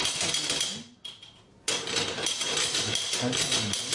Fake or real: real